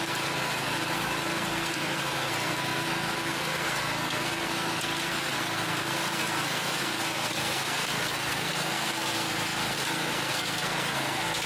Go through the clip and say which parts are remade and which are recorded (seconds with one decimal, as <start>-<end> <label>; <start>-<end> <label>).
0.0-11.5 remade